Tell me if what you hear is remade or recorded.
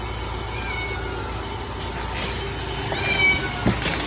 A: recorded